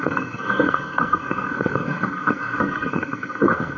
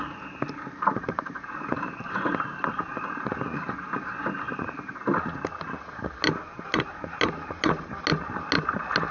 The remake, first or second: first